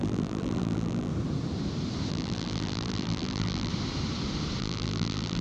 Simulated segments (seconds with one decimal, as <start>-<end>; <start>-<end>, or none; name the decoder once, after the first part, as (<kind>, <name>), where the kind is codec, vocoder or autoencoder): 0.0-1.1 (vocoder, BigVGAN v2); 2.1-3.7; 4.6-5.4